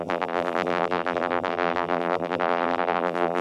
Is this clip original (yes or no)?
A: no